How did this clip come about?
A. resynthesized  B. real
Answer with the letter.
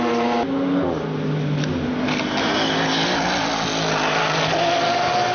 B